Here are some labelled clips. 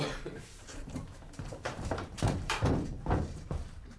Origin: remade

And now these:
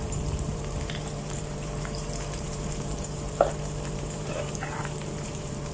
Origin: remade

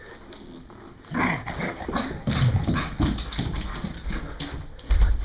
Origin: recorded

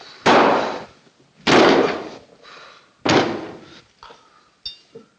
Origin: recorded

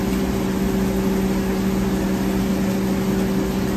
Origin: recorded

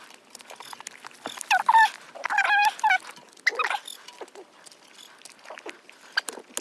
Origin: recorded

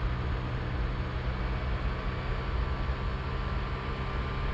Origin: recorded